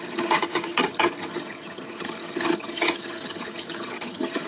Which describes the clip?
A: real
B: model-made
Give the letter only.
B